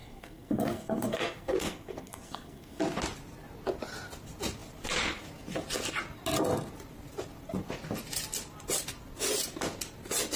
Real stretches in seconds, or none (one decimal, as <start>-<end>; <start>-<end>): 2.8-10.4